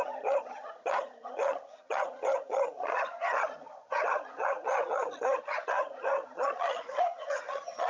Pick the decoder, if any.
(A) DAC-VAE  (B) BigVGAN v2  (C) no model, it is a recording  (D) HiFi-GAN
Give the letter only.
D